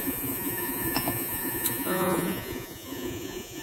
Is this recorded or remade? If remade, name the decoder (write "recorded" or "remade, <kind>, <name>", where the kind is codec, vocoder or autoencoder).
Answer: remade, vocoder, Vocos